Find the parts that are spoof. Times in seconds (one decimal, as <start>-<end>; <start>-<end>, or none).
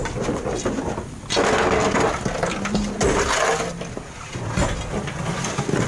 none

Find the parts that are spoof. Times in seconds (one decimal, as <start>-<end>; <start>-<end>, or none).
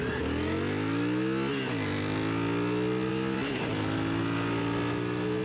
3.1-4.2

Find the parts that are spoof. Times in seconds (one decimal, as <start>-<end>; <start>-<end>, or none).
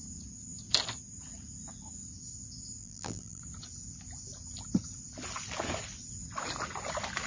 2.8-3.4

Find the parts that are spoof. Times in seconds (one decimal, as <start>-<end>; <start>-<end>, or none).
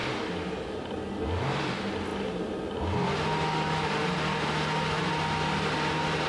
none